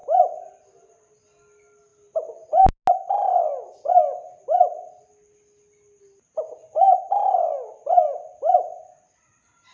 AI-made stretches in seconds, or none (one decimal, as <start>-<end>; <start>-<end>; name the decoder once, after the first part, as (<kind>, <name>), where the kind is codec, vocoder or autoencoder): none